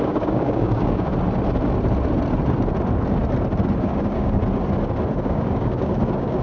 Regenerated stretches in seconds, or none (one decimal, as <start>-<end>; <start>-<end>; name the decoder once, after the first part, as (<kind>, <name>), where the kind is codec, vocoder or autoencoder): 0.0-1.1 (codec, DAC); 3.8-4.4; 5.2-6.4

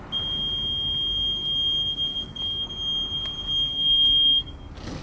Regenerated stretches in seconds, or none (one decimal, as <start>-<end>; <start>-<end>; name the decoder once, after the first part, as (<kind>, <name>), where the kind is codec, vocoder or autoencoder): 2.1-2.7 (codec, DAC); 3.7-4.6

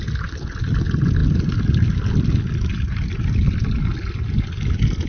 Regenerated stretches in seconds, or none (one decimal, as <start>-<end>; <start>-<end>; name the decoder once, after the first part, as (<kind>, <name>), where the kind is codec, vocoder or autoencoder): none